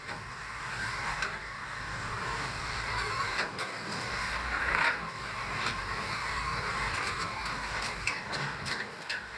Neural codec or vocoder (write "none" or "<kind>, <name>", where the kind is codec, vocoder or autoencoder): codec, DAC